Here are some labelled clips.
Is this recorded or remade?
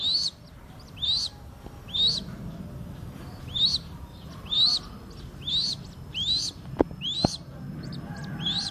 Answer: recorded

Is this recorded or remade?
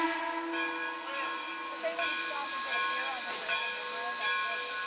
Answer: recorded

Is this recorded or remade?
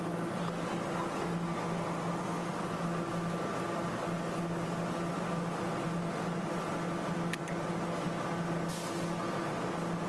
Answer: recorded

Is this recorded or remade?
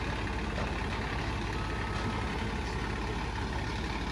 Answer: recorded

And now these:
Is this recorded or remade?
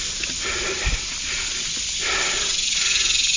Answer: recorded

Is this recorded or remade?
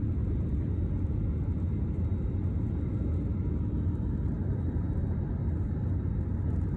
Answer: recorded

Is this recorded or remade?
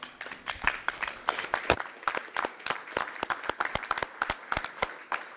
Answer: recorded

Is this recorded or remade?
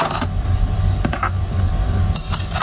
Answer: recorded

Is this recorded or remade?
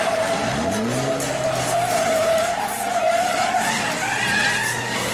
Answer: recorded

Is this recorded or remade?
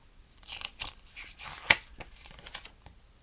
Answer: recorded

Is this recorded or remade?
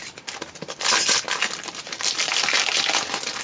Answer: recorded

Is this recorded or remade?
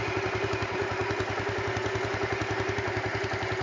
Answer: recorded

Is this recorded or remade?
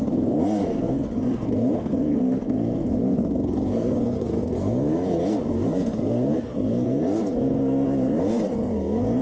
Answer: remade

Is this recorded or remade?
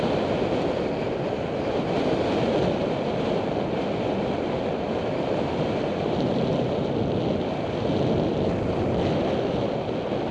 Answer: recorded